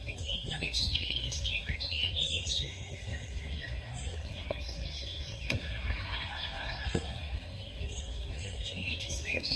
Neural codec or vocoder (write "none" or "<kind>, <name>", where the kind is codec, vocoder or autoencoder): codec, SNAC